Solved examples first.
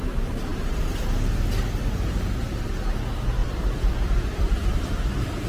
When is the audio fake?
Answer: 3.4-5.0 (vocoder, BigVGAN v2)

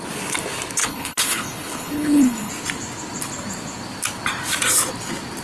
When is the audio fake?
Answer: 0.8-2.5 (codec, HILCodec)